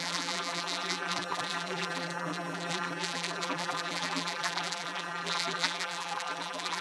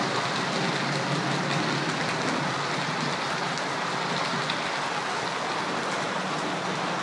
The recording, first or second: second